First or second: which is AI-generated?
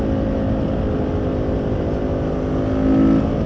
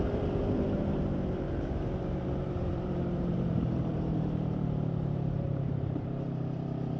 second